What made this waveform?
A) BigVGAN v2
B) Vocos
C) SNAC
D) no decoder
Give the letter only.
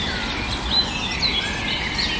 D